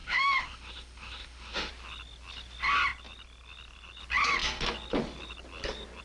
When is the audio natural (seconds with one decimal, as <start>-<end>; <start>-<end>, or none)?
1.7-6.0